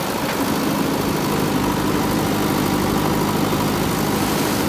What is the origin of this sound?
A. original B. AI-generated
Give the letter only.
A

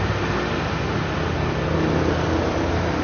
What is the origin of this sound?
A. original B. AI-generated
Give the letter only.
A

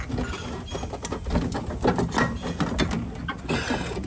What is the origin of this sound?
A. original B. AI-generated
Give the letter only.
A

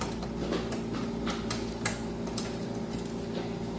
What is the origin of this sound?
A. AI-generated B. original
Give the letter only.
B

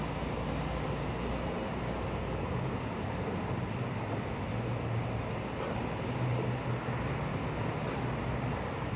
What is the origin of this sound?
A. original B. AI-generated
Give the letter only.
A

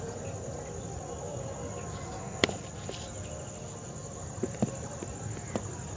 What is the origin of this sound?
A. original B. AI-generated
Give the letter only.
A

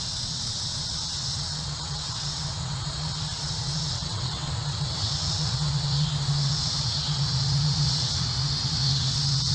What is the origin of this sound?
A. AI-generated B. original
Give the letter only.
A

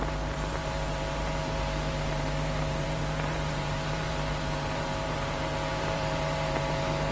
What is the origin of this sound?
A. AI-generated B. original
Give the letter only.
A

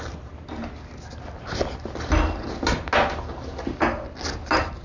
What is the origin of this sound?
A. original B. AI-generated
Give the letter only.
A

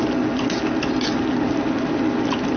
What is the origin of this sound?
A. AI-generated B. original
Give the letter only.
B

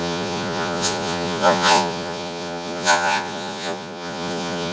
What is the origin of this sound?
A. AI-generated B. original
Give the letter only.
A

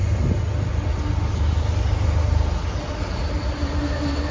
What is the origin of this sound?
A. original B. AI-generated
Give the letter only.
A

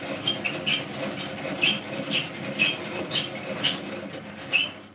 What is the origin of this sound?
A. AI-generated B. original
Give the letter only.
B